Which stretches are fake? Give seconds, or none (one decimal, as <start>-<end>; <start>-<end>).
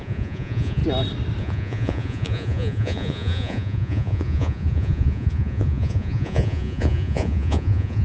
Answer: 0.0-0.8; 1.4-8.0